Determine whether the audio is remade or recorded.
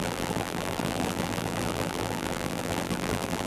remade